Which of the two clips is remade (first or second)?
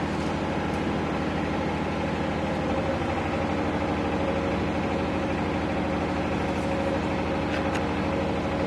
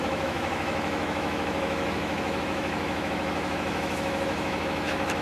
second